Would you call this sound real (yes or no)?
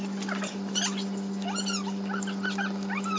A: yes